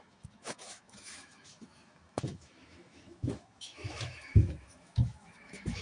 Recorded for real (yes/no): no